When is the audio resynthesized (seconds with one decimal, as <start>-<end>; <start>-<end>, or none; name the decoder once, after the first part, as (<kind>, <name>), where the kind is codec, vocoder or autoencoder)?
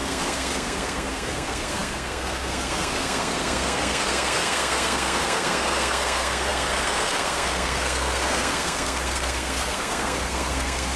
0.0-11.0 (codec, SNAC)